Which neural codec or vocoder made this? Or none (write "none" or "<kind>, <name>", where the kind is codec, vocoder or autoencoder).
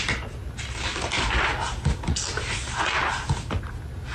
none